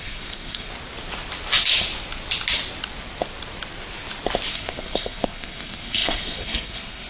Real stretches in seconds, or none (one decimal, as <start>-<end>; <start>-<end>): 0.7-4.5